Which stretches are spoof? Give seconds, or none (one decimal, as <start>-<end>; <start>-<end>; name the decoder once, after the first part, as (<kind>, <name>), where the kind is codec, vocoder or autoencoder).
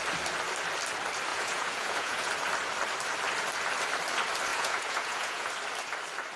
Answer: 1.3-2.3 (vocoder, Vocos); 4.5-5.5